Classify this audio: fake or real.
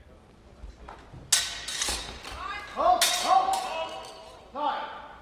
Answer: real